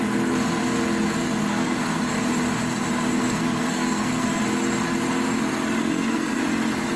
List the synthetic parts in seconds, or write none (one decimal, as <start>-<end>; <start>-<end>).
1.4-2.0; 3.2-4.4; 5.8-6.4